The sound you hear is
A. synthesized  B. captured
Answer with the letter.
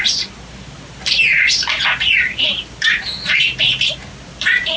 B